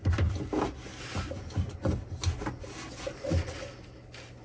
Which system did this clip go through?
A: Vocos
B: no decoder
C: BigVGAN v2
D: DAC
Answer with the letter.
B